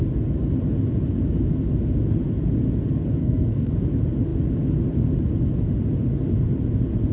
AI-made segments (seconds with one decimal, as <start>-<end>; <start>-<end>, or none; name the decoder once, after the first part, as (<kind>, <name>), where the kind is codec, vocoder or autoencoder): 3.2-3.7 (codec, SNAC)